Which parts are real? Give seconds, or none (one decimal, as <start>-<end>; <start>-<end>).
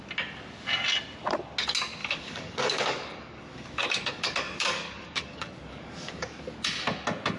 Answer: 0.0-2.0; 6.4-7.4